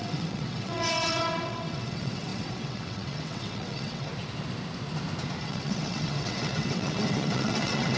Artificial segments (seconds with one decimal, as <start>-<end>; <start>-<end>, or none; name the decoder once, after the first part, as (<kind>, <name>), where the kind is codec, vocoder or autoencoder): 0.0-4.1 (vocoder, WaveNeXt); 5.4-8.0